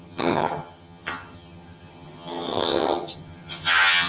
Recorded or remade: remade